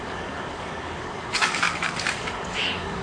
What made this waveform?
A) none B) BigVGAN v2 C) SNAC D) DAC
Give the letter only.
D